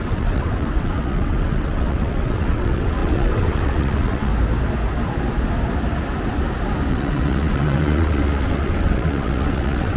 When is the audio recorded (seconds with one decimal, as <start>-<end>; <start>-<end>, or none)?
4.3-6.9